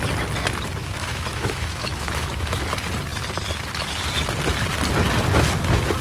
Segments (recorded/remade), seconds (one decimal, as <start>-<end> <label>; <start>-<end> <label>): 0.0-0.8 recorded; 0.8-2.6 remade; 2.6-6.0 recorded